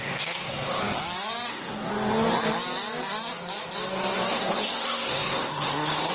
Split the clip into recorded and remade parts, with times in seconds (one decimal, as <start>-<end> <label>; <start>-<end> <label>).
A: 0.0-0.8 remade; 0.8-1.5 recorded; 1.5-1.9 remade; 1.9-4.3 recorded; 4.3-6.1 remade